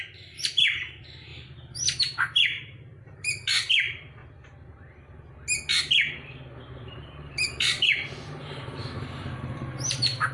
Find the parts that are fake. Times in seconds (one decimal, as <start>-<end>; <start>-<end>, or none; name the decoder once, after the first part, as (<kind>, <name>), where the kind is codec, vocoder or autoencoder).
0.0-1.3 (vocoder, BigVGAN v2); 2.0-4.2; 6.6-10.3